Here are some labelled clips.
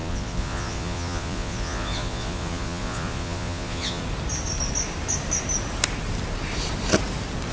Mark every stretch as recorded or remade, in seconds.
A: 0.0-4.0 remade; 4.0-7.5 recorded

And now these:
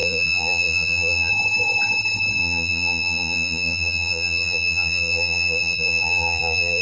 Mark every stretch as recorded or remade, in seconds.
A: 0.0-1.3 remade; 1.3-2.4 recorded; 2.4-6.8 remade

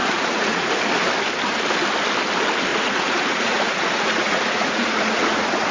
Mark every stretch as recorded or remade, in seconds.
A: 0.0-0.7 remade; 0.7-2.7 recorded; 2.7-5.7 remade

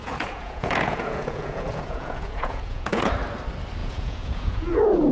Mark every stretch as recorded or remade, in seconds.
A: 0.0-3.1 remade; 3.1-3.8 recorded; 3.8-5.1 remade

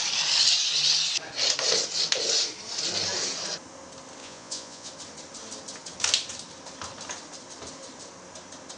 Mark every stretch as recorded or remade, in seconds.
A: 0.0-4.2 recorded; 4.2-4.9 remade; 4.9-8.8 recorded